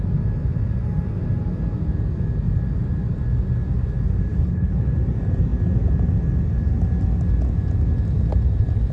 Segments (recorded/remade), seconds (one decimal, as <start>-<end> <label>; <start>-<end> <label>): 0.0-4.3 recorded; 4.3-4.9 remade; 4.9-8.9 recorded